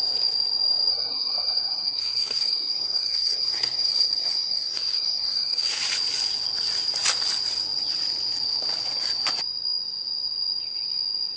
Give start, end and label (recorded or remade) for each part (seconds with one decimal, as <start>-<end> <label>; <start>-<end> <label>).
0.0-0.9 recorded; 0.9-5.8 remade; 5.8-11.4 recorded